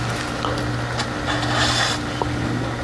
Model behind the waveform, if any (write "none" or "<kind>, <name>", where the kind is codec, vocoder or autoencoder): none